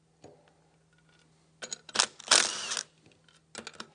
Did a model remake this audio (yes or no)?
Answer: no